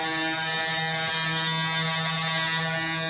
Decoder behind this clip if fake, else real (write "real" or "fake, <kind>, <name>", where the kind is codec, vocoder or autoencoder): real